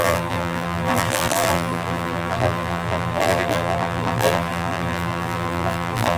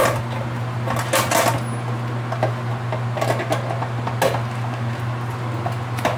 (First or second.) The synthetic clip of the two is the first